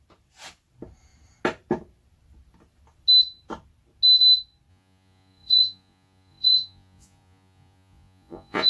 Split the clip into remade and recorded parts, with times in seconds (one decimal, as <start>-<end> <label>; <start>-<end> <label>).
0.0-4.7 recorded; 4.7-8.7 remade